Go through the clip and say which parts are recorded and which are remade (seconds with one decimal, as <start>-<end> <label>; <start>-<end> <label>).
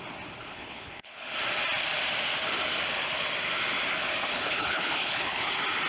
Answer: 0.0-0.4 recorded; 0.4-1.3 remade; 1.3-4.3 recorded; 4.3-5.5 remade; 5.5-5.9 recorded